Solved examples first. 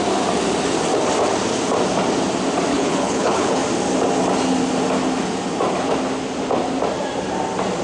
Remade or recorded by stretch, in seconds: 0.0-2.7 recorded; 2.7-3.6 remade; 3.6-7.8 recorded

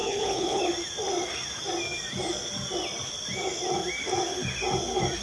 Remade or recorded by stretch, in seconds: 0.0-0.6 remade; 0.6-5.2 recorded

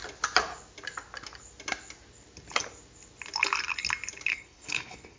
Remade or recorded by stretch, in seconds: 0.0-4.3 recorded; 4.3-5.2 remade

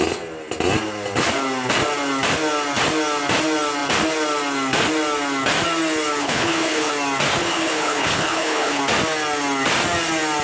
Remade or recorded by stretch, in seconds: 0.0-6.2 recorded; 6.2-6.9 remade; 6.9-7.4 recorded; 7.4-8.8 remade; 8.8-10.4 recorded

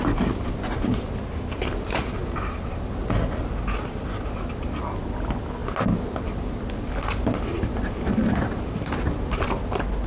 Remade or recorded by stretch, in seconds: 0.0-10.1 recorded

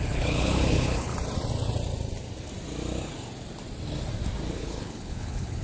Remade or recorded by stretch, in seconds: 0.0-1.1 remade; 1.1-4.5 recorded; 4.5-5.6 remade